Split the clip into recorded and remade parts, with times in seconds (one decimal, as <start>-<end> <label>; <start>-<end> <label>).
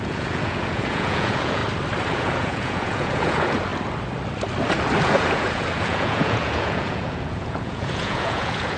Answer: 0.0-1.6 remade; 1.6-2.1 recorded; 2.1-3.7 remade; 3.7-5.0 recorded; 5.0-8.8 remade